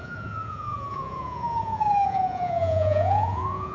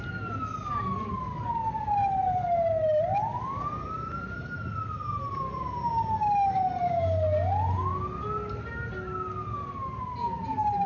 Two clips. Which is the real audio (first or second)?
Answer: second